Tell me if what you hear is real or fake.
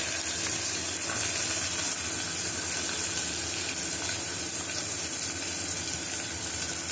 real